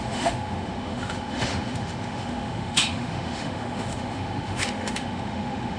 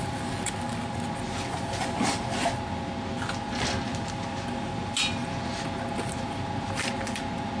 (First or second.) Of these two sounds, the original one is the second